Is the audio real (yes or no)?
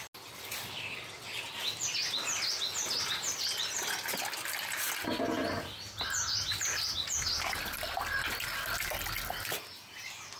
yes